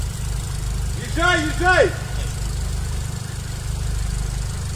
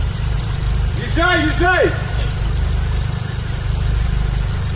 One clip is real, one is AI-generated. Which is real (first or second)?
first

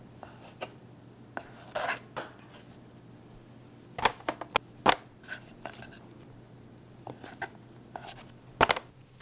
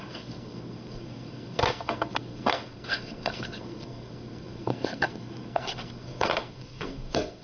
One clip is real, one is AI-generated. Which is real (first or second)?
first